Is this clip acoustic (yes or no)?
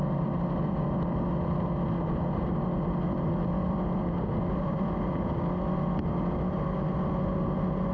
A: yes